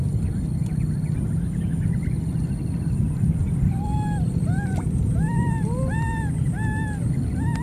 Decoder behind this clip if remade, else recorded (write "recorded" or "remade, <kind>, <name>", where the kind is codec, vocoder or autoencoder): recorded